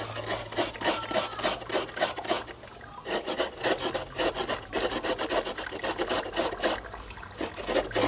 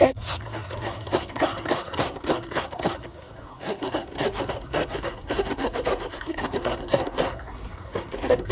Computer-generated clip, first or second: second